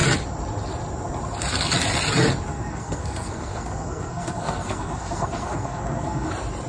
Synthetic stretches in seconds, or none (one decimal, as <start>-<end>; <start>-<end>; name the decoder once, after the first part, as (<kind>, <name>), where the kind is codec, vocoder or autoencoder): 2.5-6.3 (codec, SNAC)